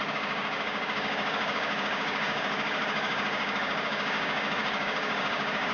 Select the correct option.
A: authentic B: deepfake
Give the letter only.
B